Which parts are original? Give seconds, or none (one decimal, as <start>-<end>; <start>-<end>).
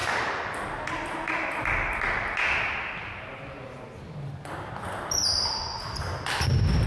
0.0-6.9